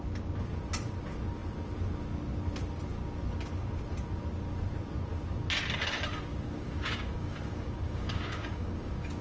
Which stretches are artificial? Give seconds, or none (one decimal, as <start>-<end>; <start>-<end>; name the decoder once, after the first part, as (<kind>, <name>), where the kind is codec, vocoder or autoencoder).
6.3-9.2 (codec, DAC)